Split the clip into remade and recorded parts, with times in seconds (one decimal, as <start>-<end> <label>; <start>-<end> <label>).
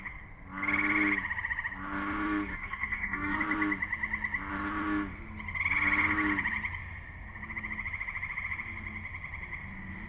0.0-2.5 recorded; 2.5-3.4 remade; 3.4-10.1 recorded